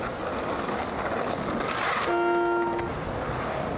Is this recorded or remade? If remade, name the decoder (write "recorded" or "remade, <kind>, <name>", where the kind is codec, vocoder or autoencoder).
recorded